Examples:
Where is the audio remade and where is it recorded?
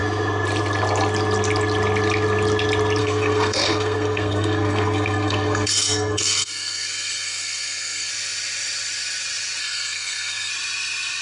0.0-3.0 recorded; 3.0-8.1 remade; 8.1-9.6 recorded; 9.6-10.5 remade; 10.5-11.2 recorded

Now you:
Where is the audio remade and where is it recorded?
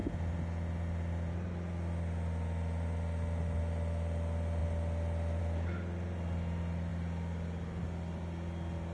0.0-8.9 recorded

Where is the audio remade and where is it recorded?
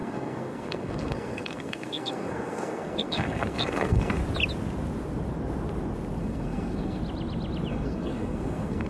0.0-4.2 remade; 4.2-6.2 recorded; 6.2-7.0 remade; 7.0-7.7 recorded; 7.7-8.9 remade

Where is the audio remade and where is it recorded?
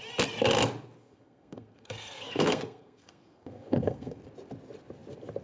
0.0-1.0 recorded; 1.0-4.2 remade; 4.2-5.4 recorded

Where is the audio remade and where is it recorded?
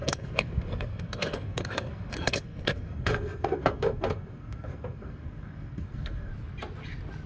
0.0-6.3 remade; 6.3-7.3 recorded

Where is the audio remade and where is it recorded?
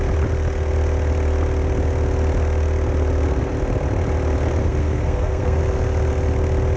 0.0-4.6 recorded; 4.6-5.6 remade; 5.6-6.8 recorded